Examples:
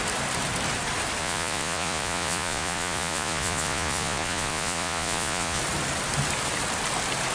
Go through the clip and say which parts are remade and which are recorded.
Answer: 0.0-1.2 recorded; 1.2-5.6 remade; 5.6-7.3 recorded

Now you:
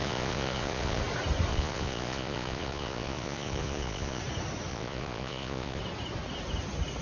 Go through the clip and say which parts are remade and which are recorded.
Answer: 0.0-1.0 remade; 1.0-1.5 recorded; 1.5-4.2 remade; 4.2-4.7 recorded; 4.7-5.8 remade; 5.8-7.0 recorded

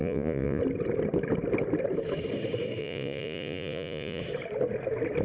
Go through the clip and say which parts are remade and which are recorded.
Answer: 0.0-0.6 remade; 0.6-2.8 recorded; 2.8-4.2 remade; 4.2-5.2 recorded

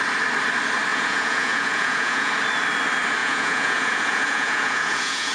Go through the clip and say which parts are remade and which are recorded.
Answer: 0.0-0.9 recorded; 0.9-2.3 remade; 2.3-3.2 recorded; 3.2-5.3 remade

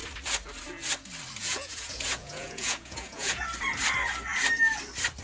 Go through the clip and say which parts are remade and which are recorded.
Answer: 0.0-1.4 recorded; 1.4-3.4 remade; 3.4-5.2 recorded